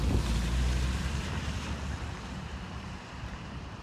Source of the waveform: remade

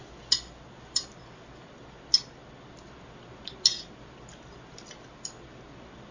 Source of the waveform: recorded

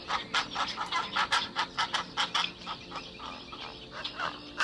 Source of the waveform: recorded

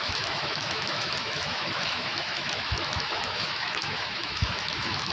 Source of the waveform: remade